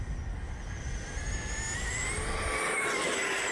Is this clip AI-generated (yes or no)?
no